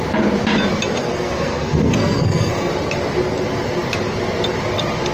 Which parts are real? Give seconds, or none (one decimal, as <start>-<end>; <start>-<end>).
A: 0.0-1.0; 2.7-5.1